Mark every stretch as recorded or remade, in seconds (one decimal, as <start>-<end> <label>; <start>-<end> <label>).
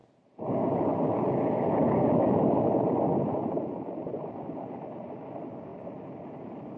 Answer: 0.0-6.8 recorded